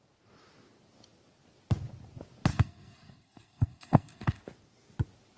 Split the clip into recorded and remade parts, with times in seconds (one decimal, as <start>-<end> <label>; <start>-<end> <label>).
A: 0.0-2.5 recorded; 2.5-4.4 remade; 4.4-5.4 recorded